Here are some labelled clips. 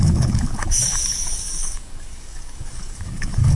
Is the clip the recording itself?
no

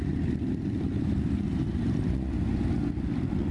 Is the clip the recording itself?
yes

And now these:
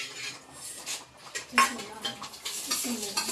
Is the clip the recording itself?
yes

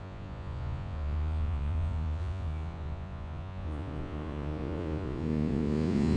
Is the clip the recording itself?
no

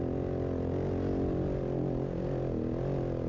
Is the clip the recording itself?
yes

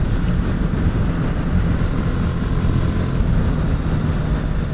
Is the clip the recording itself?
yes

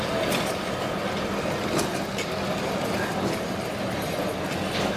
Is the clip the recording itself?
yes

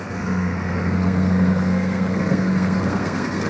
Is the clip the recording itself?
no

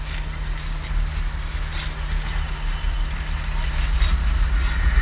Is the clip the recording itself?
yes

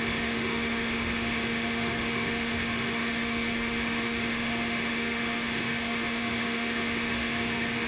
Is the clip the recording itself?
no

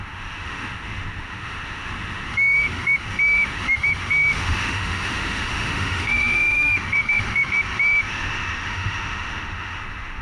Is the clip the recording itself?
no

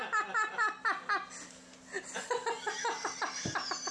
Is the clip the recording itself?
yes